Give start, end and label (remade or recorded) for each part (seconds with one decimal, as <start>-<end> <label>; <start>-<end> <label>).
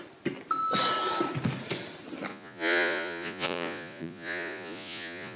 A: 0.0-2.3 recorded; 2.3-5.4 remade